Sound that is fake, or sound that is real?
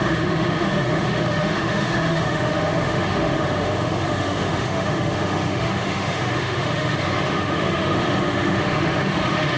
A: fake